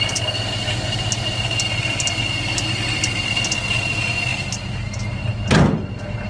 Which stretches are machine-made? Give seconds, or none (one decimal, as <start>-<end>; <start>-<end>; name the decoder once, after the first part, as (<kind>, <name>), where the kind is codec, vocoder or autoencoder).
none